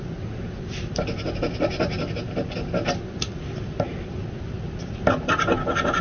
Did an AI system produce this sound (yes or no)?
no